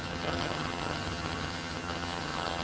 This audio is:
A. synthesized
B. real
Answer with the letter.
A